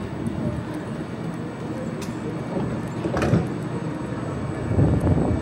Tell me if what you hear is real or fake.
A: real